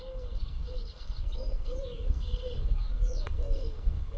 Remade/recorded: remade